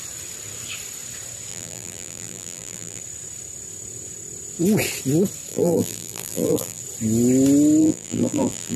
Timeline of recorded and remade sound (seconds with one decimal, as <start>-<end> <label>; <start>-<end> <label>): 0.0-1.5 recorded; 1.5-3.0 remade; 3.0-5.5 recorded; 5.5-6.8 remade; 6.8-7.8 recorded; 7.8-8.8 remade